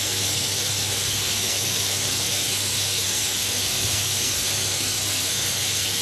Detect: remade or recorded remade